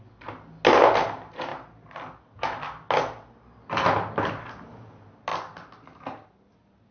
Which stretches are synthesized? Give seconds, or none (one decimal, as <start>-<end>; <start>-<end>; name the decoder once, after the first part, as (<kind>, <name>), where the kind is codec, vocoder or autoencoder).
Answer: none